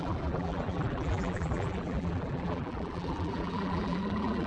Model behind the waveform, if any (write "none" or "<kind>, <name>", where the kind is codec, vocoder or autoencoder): vocoder, BigVGAN v2